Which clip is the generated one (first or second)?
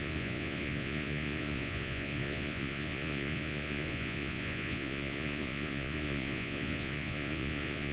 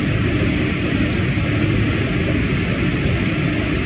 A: first